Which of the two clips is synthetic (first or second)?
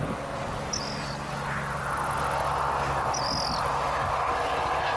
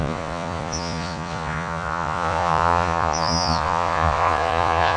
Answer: second